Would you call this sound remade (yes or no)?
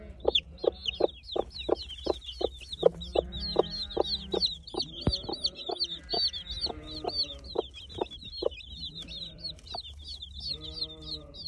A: no